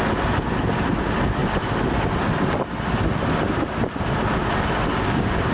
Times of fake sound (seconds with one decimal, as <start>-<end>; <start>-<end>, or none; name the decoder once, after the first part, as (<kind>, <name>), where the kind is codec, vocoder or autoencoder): 4.9-5.5 (codec, DAC)